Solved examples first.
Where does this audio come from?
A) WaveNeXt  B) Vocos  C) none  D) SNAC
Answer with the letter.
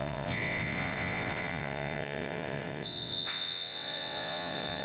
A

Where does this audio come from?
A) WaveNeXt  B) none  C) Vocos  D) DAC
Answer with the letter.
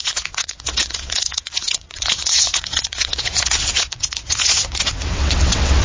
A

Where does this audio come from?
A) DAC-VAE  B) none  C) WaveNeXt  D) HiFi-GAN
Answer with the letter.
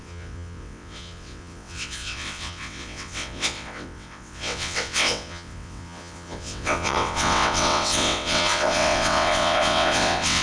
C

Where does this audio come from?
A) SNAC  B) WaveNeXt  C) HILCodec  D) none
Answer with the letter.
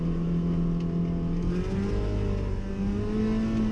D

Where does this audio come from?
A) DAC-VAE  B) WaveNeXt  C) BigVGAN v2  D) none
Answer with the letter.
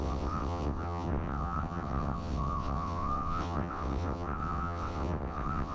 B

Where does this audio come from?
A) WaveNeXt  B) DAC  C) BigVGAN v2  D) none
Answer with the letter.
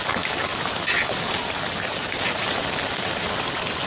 D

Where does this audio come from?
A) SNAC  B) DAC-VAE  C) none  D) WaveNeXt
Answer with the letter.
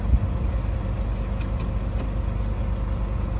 C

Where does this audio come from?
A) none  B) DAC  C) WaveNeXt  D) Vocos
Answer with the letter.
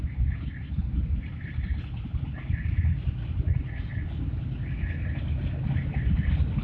A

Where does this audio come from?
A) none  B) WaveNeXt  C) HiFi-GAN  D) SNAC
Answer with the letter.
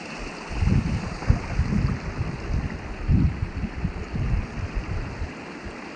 A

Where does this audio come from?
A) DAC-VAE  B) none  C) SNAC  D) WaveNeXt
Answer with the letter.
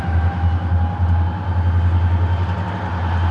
B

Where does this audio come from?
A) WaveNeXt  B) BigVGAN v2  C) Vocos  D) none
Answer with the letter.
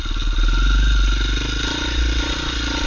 D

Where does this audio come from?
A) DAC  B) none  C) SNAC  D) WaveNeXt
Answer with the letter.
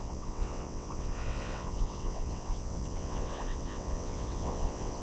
D